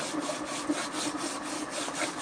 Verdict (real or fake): real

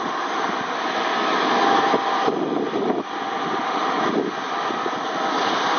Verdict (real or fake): real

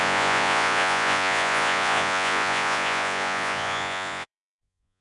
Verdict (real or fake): fake